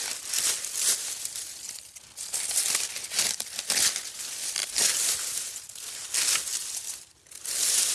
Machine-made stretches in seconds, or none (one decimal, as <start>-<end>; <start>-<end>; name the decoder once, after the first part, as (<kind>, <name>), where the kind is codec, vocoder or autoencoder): none